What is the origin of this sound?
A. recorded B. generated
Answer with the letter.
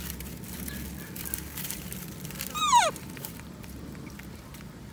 B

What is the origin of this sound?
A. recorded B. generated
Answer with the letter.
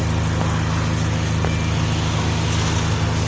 A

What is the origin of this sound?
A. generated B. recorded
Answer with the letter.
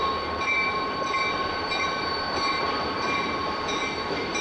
A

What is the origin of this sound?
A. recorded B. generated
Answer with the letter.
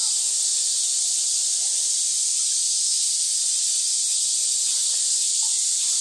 A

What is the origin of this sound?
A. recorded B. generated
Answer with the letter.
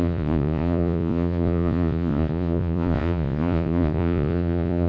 B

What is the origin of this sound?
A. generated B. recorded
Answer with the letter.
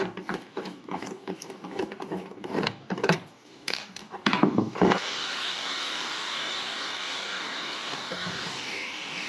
A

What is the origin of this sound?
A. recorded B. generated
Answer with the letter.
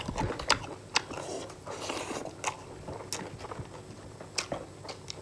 A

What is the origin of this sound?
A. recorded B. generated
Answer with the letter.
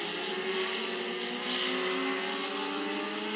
A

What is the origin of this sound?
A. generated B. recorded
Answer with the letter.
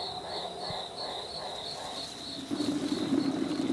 B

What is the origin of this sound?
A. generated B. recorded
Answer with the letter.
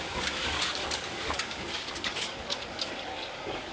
A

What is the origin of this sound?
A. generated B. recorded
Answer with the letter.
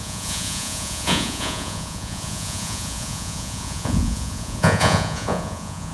A